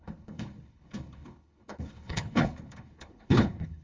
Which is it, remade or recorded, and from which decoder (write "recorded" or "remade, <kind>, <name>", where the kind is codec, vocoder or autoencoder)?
remade, codec, HILCodec